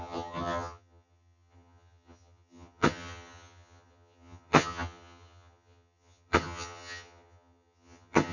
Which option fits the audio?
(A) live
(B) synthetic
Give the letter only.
B